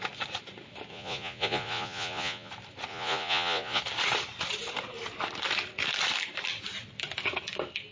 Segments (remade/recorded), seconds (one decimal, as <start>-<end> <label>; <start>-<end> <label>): 0.0-0.9 recorded; 0.9-2.5 remade; 2.5-2.9 recorded; 2.9-3.8 remade; 3.8-7.9 recorded